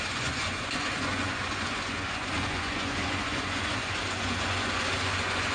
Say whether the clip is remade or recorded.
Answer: remade